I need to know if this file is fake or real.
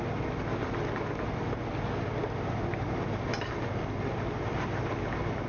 real